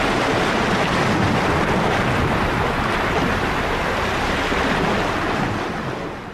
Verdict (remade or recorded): recorded